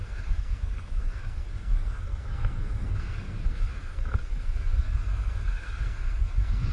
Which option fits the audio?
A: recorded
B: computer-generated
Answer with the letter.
B